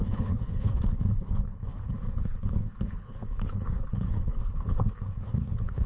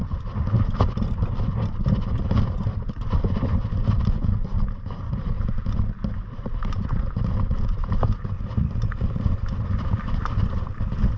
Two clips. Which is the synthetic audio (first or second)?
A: first